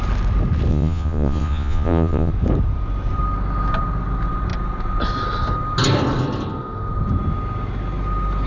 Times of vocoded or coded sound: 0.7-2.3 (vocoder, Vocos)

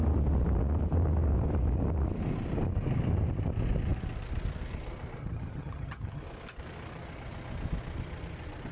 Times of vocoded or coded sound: 5.2-6.2 (vocoder, HiFi-GAN)

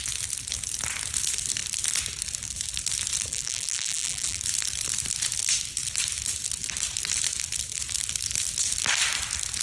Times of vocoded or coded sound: 3.3-4.4 (vocoder, BigVGAN v2)

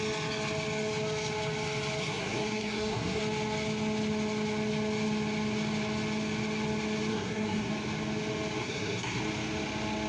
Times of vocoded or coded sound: 2.0-3.2 (codec, SNAC); 7.1-7.7; 8.6-9.2

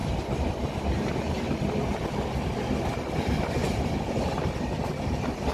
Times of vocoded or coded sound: 3.6-4.6 (vocoder, BigVGAN v2)

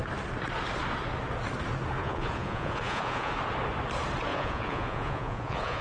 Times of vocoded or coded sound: 2.0-3.3 (vocoder, Vocos); 4.3-5.8